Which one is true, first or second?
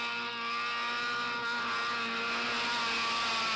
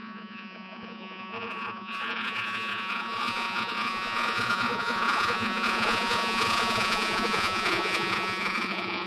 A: first